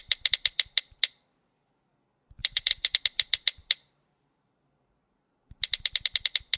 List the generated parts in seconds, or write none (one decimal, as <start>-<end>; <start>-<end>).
2.4-3.0